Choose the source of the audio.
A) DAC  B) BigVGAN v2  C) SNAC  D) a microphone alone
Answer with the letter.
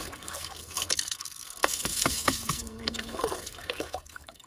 C